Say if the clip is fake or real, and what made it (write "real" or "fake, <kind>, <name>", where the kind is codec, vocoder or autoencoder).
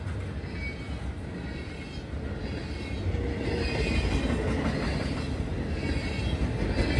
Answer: real